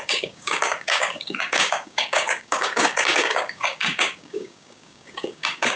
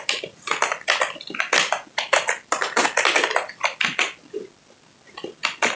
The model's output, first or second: first